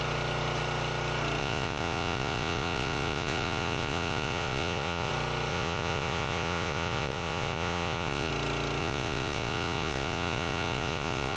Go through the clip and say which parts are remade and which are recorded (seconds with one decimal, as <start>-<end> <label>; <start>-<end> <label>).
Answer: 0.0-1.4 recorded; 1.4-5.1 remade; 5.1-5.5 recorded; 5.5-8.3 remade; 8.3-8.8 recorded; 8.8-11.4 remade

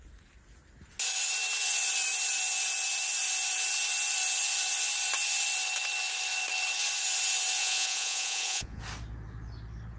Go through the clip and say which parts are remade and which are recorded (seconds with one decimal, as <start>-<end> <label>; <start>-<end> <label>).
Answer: 0.0-7.6 recorded; 7.6-8.8 remade; 8.8-10.0 recorded

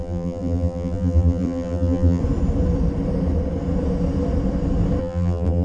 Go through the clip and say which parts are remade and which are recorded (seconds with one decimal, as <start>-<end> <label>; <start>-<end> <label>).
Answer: 0.0-2.2 remade; 2.2-5.0 recorded; 5.0-5.6 remade

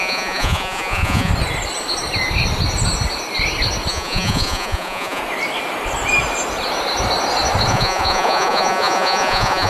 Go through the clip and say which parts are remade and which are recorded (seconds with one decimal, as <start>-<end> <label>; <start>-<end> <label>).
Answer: 0.0-1.3 remade; 1.3-3.9 recorded; 3.9-5.2 remade; 5.2-7.7 recorded; 7.7-9.7 remade

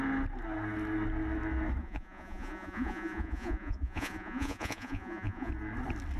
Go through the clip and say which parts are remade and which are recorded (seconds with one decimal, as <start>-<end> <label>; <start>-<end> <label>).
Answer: 0.0-1.8 recorded; 1.8-5.5 remade; 5.5-6.2 recorded

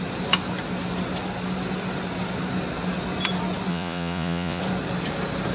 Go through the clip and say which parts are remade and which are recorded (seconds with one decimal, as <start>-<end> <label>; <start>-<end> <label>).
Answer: 0.0-3.7 recorded; 3.7-4.6 remade; 4.6-5.5 recorded

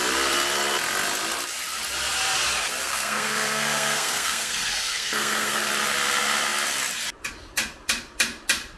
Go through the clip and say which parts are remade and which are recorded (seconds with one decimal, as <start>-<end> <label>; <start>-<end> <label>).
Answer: 0.0-2.8 recorded; 2.8-5.7 remade; 5.7-8.8 recorded